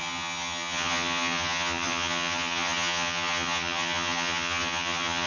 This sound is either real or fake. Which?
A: fake